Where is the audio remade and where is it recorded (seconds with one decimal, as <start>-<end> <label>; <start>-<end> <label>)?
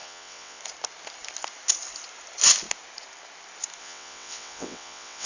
0.0-0.6 remade; 0.6-3.8 recorded; 3.8-5.3 remade